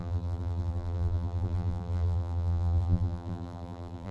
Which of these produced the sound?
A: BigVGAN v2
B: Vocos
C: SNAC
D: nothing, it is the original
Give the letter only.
A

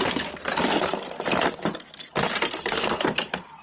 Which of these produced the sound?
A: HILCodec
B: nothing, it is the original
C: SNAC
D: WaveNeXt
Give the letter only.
B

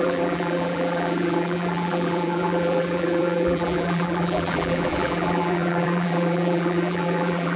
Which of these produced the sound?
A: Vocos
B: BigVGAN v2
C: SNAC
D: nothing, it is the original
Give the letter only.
B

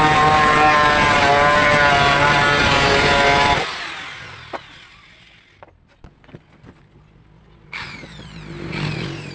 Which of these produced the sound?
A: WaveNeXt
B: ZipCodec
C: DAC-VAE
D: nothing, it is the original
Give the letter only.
D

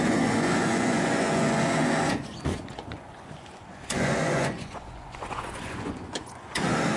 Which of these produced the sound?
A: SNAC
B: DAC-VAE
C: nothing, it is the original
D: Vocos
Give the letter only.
D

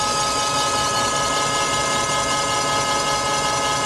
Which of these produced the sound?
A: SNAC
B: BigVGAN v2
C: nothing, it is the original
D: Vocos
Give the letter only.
C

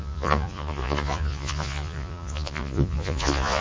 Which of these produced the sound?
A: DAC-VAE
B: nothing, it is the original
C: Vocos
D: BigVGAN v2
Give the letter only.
C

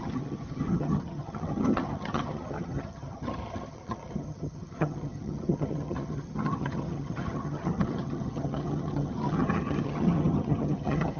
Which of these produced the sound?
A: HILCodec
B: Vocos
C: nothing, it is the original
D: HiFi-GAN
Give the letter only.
D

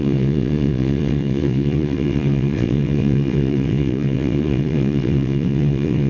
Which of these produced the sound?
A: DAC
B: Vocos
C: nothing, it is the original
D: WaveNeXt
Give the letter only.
D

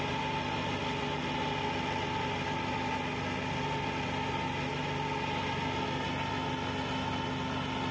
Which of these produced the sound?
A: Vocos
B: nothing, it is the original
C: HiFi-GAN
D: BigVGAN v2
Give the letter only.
B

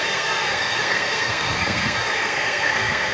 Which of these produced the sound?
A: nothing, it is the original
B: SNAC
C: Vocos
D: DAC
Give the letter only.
B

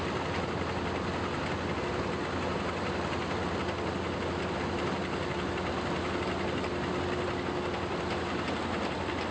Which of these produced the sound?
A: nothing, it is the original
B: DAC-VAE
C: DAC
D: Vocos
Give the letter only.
A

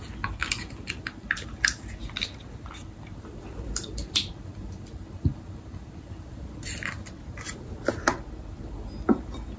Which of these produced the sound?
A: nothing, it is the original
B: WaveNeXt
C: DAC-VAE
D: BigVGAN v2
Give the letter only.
A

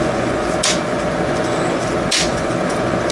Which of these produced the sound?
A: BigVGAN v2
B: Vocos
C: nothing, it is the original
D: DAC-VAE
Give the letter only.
B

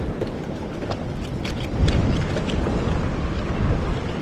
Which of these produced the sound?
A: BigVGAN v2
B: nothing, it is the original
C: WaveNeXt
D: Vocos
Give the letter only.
B